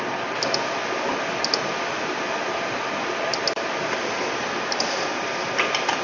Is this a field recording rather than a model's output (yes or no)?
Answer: yes